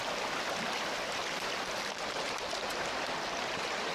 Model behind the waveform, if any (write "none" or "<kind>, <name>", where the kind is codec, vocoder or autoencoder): none